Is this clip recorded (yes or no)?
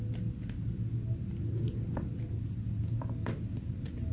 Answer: yes